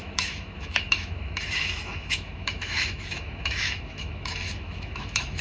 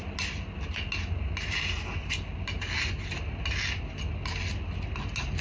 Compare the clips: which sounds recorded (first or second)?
second